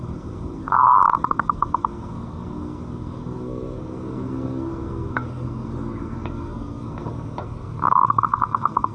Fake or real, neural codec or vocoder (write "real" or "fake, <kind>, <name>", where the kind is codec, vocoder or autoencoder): fake, codec, SNAC